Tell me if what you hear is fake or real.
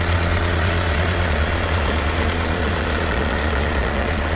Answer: fake